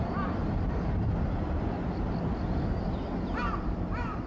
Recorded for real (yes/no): no